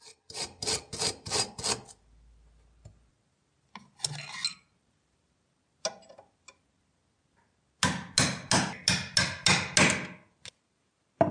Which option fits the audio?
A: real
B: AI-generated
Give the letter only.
A